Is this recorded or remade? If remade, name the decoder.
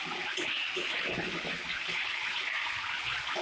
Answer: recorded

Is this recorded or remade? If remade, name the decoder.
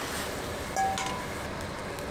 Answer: recorded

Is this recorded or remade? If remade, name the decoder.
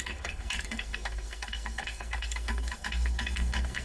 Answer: remade, codec, SNAC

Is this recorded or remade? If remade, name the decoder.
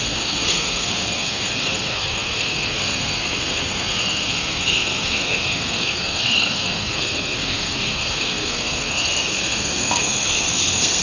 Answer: remade, codec, SNAC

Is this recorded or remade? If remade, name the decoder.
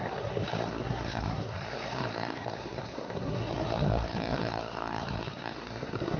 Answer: remade, codec, SNAC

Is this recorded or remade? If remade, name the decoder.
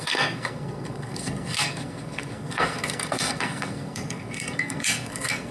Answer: remade, codec, SNAC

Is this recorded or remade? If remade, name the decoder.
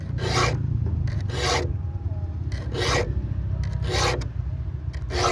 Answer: recorded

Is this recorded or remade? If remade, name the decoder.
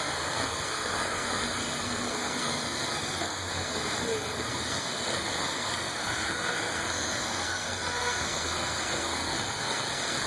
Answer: remade, codec, SNAC